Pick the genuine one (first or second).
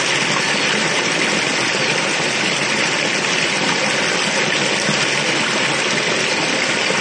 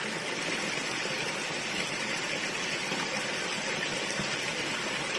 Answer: first